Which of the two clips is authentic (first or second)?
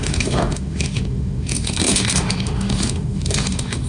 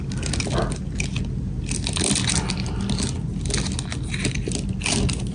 second